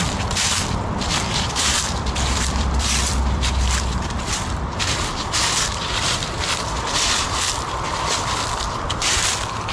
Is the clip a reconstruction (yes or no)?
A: yes